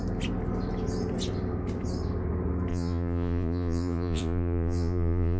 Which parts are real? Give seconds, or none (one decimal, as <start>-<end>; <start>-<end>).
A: 0.0-2.7